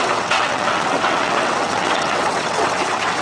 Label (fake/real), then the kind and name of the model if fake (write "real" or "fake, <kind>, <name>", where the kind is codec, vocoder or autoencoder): fake, vocoder, WaveNeXt